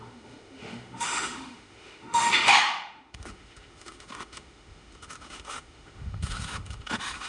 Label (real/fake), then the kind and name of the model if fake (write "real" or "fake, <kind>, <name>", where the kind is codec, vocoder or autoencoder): fake, autoencoder, DAC-VAE